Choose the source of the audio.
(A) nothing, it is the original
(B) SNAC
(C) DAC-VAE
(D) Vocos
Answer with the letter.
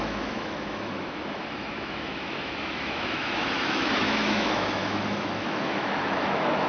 C